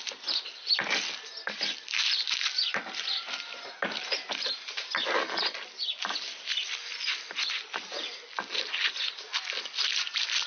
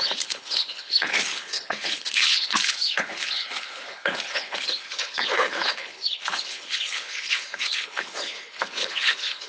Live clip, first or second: first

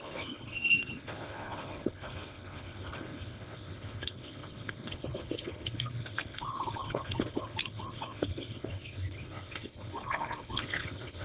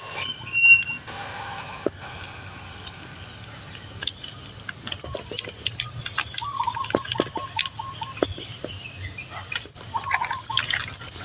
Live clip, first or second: second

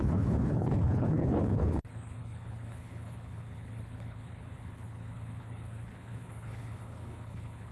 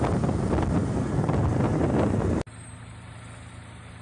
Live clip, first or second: second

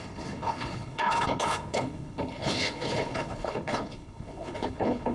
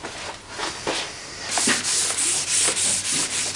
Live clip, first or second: second